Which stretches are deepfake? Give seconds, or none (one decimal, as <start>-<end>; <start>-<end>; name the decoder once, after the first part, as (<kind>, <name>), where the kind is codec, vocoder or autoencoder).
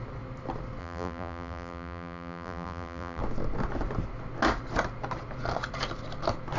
0.8-3.2 (vocoder, BigVGAN v2)